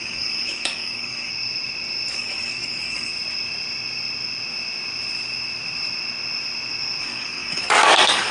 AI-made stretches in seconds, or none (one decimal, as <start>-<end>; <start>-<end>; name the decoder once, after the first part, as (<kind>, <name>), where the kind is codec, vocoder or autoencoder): 0.0-1.3 (codec, DAC); 2.1-3.1; 7.0-8.3